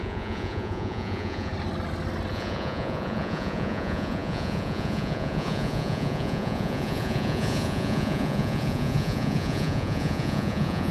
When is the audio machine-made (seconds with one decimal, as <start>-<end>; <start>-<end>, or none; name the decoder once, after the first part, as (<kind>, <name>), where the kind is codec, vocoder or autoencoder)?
0.0-1.5 (vocoder, Vocos); 2.3-10.9